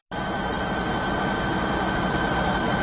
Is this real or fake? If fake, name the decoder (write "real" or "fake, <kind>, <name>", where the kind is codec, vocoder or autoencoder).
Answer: real